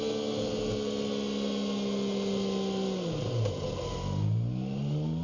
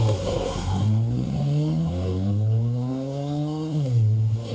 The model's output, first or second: second